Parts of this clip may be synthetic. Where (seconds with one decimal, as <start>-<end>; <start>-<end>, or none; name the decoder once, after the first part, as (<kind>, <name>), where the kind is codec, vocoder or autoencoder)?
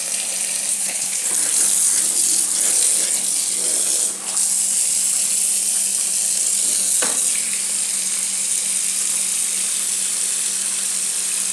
0.7-1.3 (codec, HILCodec)